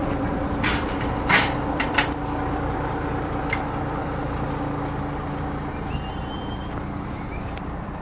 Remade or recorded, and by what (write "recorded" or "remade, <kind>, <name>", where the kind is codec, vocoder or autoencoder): remade, vocoder, BigVGAN v2